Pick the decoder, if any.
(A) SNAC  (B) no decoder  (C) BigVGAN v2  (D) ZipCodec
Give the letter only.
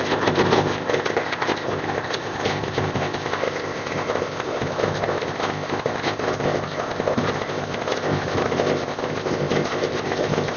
D